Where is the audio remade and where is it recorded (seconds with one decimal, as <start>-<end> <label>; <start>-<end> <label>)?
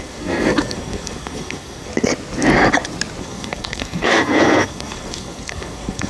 0.0-1.9 remade; 1.9-3.2 recorded; 3.2-6.1 remade